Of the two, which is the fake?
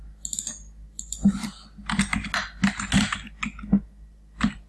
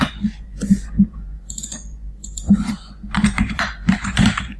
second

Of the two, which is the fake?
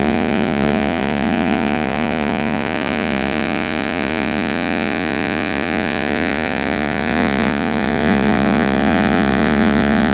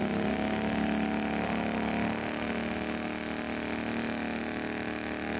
first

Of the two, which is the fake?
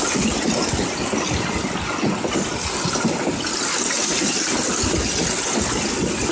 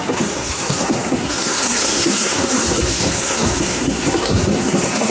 second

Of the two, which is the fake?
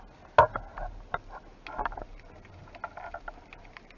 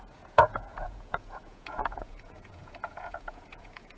second